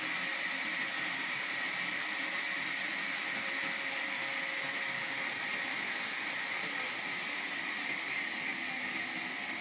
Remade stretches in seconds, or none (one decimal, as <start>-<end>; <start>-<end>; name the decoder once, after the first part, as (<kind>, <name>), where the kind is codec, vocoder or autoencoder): none